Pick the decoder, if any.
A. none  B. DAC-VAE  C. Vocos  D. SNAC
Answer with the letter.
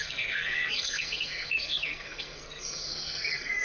D